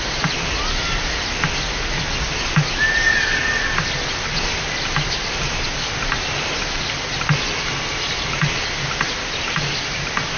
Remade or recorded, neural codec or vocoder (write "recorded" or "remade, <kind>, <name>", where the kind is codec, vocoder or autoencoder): recorded